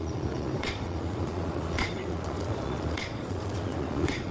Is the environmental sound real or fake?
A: fake